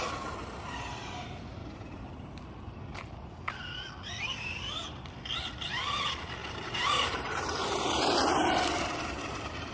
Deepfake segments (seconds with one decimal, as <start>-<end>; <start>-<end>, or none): 1.6-2.4; 6.4-8.5